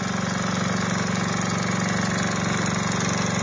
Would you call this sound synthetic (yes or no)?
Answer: no